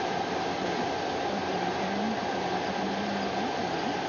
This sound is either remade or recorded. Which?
recorded